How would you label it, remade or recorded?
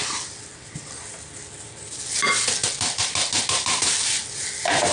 recorded